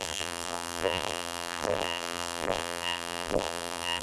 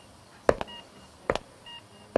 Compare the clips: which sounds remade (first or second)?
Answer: first